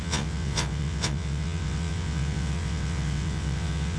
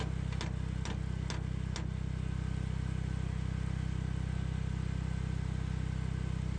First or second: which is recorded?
second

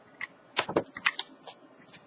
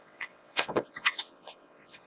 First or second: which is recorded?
first